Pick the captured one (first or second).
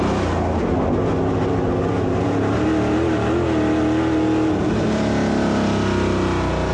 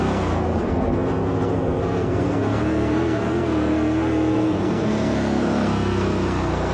first